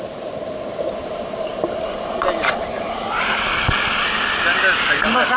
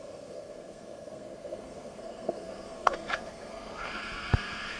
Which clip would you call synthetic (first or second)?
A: second